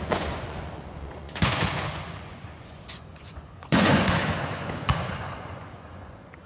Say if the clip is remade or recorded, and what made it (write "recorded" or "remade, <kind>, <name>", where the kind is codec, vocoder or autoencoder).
remade, vocoder, Vocos